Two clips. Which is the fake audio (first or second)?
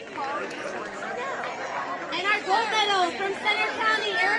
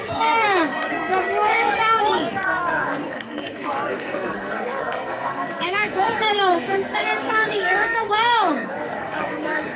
second